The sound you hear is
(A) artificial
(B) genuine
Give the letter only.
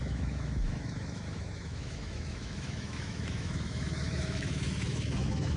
A